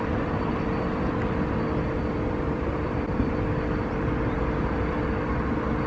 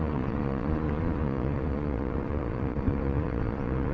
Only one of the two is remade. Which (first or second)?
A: second